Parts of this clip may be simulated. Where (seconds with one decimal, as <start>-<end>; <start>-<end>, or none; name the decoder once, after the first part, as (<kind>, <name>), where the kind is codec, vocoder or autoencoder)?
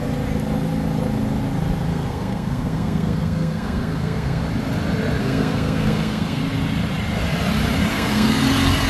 1.9-4.4 (codec, SNAC); 5.2-6.4; 7.9-8.4